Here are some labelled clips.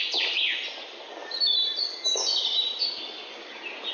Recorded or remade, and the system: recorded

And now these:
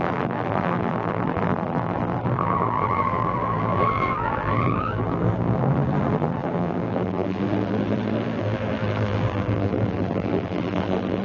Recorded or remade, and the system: remade, vocoder, BigVGAN v2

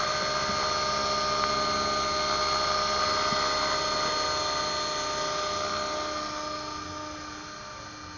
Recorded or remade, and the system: recorded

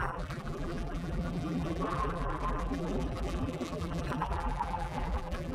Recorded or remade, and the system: remade, vocoder, BigVGAN v2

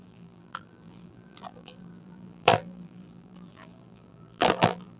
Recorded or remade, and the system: remade, vocoder, BigVGAN v2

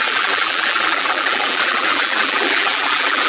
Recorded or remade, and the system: remade, vocoder, BigVGAN v2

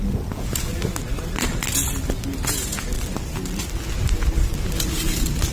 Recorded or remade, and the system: recorded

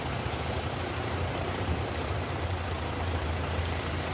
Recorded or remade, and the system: remade, vocoder, BigVGAN v2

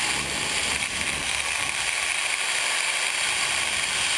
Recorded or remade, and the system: recorded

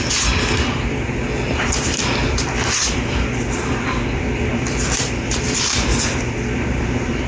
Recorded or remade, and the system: remade, vocoder, BigVGAN v2